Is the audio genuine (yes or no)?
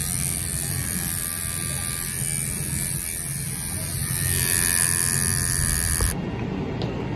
yes